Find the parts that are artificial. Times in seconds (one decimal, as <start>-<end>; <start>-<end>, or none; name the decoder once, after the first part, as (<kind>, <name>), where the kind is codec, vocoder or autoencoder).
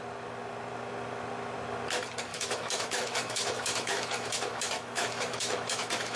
2.3-6.2 (autoencoder, DAC-VAE)